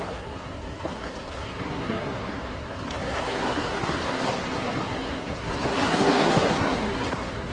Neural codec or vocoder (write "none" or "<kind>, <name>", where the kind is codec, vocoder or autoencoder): codec, SNAC